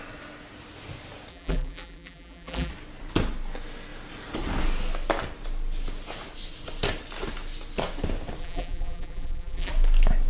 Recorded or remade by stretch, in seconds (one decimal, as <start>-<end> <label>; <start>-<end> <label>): 0.0-1.3 recorded; 1.3-2.7 remade; 2.7-8.4 recorded; 8.4-9.7 remade; 9.7-10.3 recorded